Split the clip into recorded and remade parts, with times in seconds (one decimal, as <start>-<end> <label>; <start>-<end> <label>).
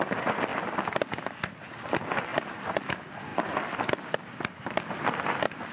0.0-5.7 recorded